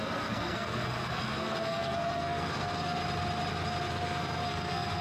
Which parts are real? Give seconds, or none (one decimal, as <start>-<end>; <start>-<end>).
3.0-3.9